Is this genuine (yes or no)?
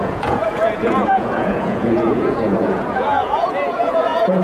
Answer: no